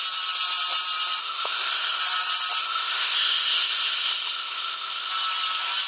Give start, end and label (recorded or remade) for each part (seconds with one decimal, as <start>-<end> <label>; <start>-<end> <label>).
0.0-1.2 recorded; 1.2-2.0 remade; 2.0-2.6 recorded; 2.6-5.1 remade; 5.1-5.9 recorded